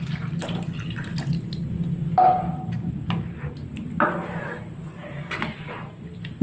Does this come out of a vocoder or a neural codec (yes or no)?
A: no